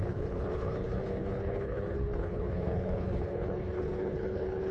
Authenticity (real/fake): fake